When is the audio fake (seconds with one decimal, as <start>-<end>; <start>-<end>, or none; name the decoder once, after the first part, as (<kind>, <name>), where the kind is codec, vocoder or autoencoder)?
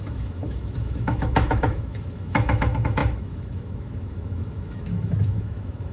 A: 0.0-5.9 (autoencoder, DAC-VAE)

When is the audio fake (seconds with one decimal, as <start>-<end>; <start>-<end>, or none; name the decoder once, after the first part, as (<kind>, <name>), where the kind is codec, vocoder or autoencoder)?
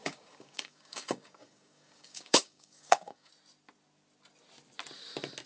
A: 0.0-3.3 (codec, DAC)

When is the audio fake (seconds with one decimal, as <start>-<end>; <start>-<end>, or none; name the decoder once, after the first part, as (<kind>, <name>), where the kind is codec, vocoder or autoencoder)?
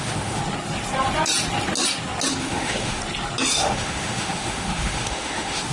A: 0.0-0.4 (autoencoder, DAC-VAE); 2.4-3.0; 3.5-5.7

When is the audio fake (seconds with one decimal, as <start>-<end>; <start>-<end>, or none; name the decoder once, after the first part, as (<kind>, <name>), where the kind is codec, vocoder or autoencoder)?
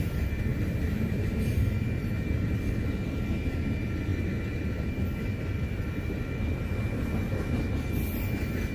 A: 0.5-2.5 (vocoder, BigVGAN v2)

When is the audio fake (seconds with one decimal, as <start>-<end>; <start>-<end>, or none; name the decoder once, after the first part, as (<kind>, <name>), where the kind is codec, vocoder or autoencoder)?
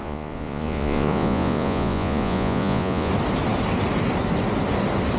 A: 0.0-3.1 (vocoder, Vocos)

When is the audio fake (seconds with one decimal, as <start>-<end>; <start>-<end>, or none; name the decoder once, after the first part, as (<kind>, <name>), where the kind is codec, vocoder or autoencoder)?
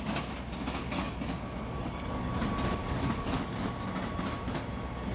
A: 0.8-2.3 (codec, DAC); 2.8-3.7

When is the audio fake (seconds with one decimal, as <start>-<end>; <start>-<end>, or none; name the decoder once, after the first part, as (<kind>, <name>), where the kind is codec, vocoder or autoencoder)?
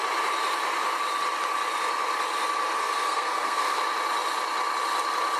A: 2.8-3.8 (codec, SNAC)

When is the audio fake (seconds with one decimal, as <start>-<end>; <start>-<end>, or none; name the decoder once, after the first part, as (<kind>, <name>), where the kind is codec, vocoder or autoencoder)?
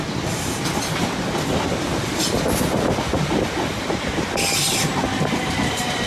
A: none